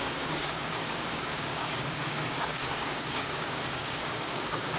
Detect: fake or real fake